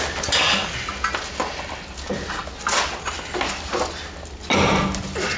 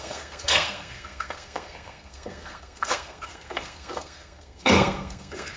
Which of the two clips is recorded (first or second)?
first